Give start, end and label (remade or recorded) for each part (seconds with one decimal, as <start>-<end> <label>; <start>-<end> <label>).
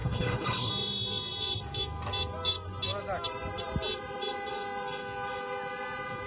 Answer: 0.0-0.7 remade; 0.7-6.3 recorded